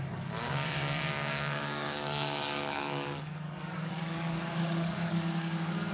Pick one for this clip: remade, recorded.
remade